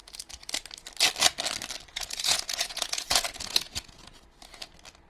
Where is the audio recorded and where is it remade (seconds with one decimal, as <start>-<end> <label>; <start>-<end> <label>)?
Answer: 0.0-1.9 recorded; 1.9-4.2 remade; 4.2-5.1 recorded